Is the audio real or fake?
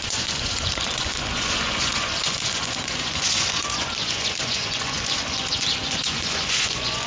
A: fake